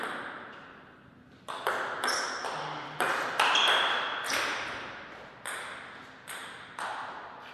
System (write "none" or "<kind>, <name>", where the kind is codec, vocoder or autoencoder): none